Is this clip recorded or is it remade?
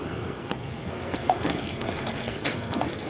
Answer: remade